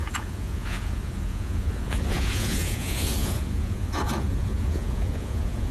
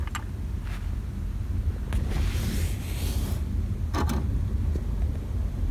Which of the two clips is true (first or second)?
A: second